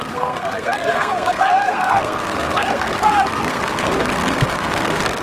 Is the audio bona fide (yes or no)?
no